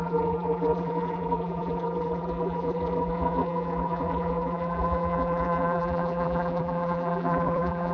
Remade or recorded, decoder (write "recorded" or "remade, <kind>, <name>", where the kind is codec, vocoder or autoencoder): remade, vocoder, BigVGAN v2